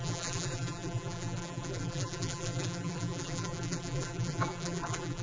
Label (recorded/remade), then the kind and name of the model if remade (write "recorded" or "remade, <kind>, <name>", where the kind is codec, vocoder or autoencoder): remade, vocoder, BigVGAN v2